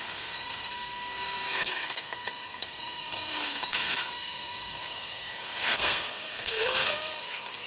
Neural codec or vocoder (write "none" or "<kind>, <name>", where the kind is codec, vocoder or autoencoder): codec, SNAC